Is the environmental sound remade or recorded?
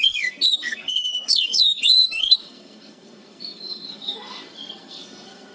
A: remade